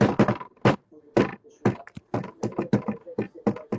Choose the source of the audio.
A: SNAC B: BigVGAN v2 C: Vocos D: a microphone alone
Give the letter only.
D